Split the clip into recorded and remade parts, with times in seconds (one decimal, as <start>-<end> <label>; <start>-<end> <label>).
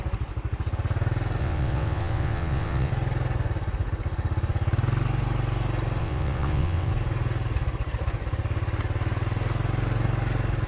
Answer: 0.0-1.4 recorded; 1.4-2.9 remade; 2.9-6.0 recorded; 6.0-6.9 remade; 6.9-10.7 recorded